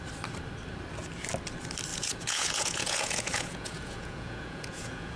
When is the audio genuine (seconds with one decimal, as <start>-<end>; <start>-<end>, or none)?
0.0-1.9